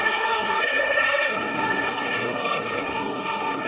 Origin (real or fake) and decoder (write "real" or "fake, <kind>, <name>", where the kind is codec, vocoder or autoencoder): fake, codec, SNAC